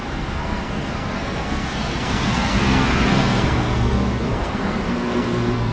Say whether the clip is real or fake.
fake